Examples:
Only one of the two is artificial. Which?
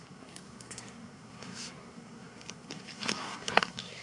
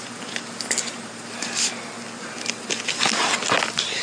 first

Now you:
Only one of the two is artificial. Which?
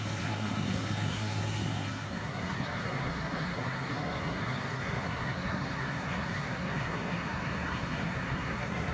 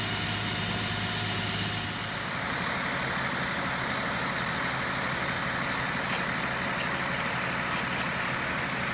first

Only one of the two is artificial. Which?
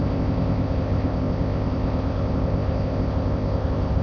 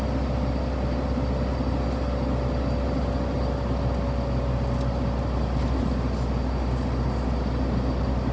first